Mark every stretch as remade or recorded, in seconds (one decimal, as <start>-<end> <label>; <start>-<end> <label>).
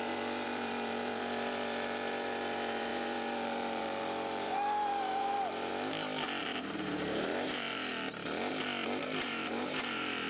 0.0-5.7 remade; 5.7-6.4 recorded; 6.4-7.9 remade; 7.9-9.0 recorded; 9.0-10.3 remade